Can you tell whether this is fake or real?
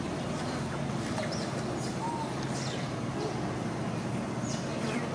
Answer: real